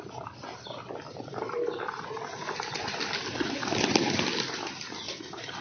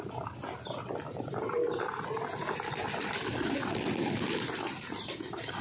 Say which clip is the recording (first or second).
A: second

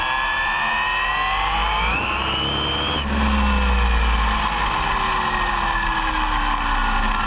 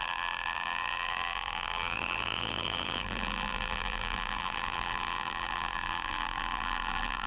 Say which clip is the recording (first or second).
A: first